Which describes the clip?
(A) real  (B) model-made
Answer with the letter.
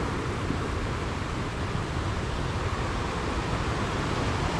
A